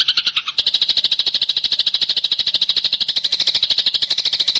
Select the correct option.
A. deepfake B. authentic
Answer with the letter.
B